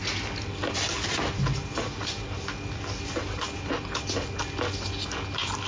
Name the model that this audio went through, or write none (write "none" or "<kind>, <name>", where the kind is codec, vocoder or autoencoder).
none